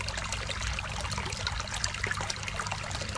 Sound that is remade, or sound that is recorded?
recorded